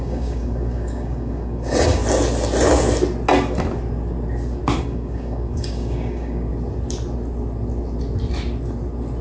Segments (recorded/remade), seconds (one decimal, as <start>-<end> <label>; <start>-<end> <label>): 0.0-2.0 remade; 2.0-4.8 recorded; 4.8-6.5 remade; 6.5-9.2 recorded